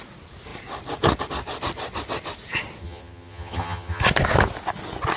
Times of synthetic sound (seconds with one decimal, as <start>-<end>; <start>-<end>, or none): 2.8-4.0